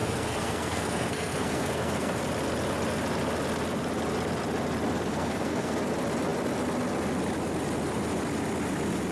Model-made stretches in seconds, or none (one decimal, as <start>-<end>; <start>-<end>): 0.0-2.2; 5.1-5.8